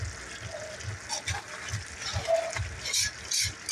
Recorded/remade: recorded